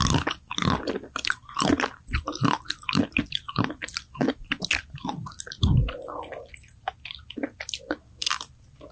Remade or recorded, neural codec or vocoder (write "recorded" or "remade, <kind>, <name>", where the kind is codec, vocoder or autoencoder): recorded